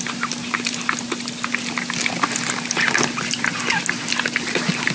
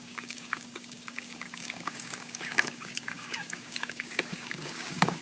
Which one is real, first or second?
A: first